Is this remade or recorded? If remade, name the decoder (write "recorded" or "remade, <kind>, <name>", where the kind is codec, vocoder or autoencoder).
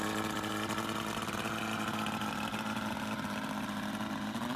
recorded